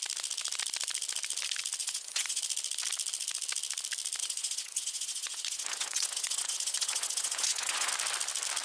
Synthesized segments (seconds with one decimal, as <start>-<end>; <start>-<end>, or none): 1.8-2.4; 4.2-7.9